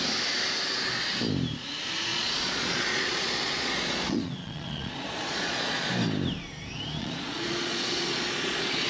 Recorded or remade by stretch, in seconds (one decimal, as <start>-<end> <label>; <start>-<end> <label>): 0.0-2.1 recorded; 2.1-5.9 remade; 5.9-7.0 recorded; 7.0-8.9 remade